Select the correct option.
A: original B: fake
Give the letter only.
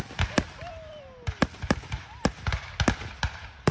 A